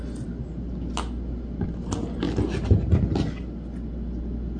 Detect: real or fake real